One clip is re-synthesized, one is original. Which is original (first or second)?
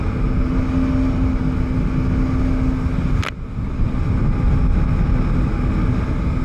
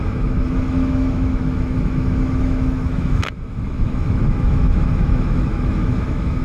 first